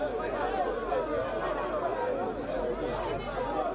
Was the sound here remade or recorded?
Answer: recorded